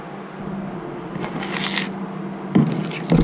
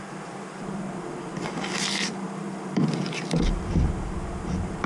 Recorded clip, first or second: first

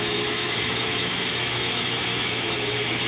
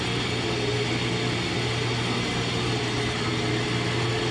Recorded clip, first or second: second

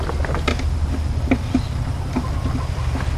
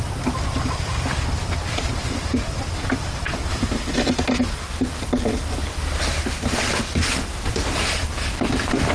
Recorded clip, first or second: first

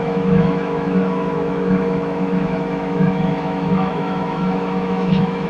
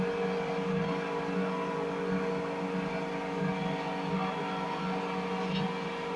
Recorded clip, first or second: second